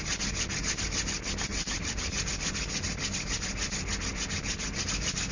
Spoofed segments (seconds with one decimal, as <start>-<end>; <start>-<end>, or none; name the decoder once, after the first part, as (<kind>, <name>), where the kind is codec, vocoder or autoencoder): 1.5-2.3 (vocoder, BigVGAN v2)